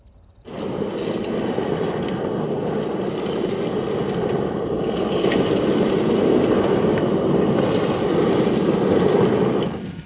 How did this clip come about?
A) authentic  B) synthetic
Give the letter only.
A